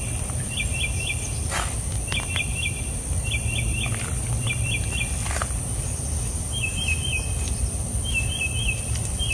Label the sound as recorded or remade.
remade